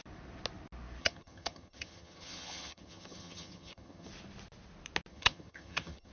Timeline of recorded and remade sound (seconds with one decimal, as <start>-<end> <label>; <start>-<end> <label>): 0.0-1.0 recorded; 1.0-4.1 remade; 4.1-5.1 recorded; 5.1-6.1 remade